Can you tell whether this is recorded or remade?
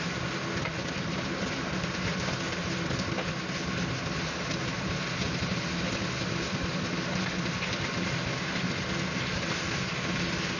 recorded